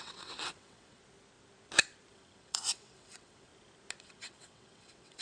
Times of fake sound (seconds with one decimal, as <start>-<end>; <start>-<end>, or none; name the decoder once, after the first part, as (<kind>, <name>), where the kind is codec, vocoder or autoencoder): 0.0-1.0 (vocoder, WaveNeXt); 2.1-3.5; 4.0-5.2